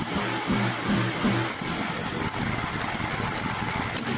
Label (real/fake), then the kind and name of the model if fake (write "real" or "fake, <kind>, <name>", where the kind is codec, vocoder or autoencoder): real